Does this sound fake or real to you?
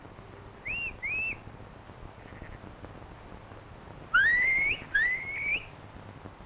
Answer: real